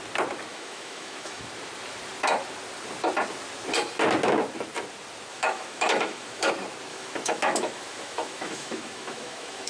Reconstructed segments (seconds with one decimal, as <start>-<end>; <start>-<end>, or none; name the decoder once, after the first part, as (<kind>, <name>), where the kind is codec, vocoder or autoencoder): 0.5-1.5 (autoencoder, DAC-VAE); 5.3-6.5; 6.9-9.7